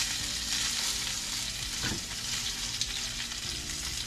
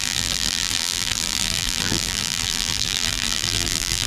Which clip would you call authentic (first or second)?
first